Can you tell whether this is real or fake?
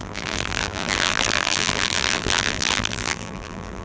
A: fake